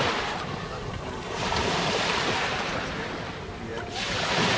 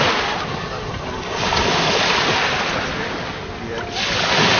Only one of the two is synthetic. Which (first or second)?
first